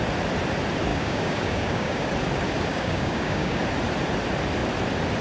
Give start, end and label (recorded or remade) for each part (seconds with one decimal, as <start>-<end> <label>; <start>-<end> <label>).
0.0-0.9 recorded; 0.9-2.1 remade; 2.1-2.7 recorded; 2.7-3.6 remade; 3.6-5.2 recorded

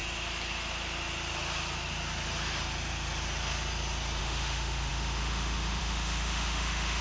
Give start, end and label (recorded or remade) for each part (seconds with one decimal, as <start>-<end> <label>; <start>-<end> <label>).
0.0-4.2 recorded; 4.2-7.0 remade

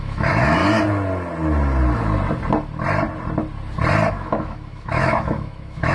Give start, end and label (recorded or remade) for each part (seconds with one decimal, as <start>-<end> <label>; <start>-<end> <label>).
0.0-0.6 remade; 0.6-4.1 recorded; 4.1-5.9 remade

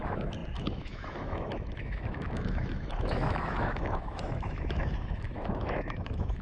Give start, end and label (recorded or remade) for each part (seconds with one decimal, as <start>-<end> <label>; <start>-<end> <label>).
0.0-6.4 remade

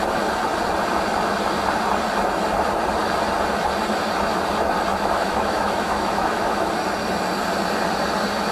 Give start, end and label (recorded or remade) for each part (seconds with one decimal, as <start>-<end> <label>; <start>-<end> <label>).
0.0-4.9 recorded; 4.9-6.7 remade; 6.7-8.5 recorded

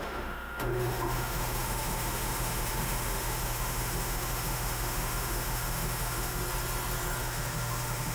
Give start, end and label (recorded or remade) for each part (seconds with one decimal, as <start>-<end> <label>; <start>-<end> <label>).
0.0-6.4 remade; 6.4-7.2 recorded; 7.2-8.1 remade

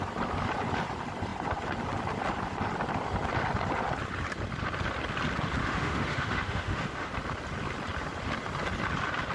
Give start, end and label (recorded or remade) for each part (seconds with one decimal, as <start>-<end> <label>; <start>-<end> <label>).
0.0-5.6 recorded; 5.6-7.1 remade; 7.1-9.3 recorded